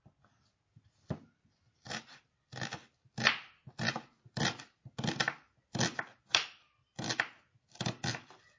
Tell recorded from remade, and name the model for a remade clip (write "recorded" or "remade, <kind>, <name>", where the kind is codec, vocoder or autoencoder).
recorded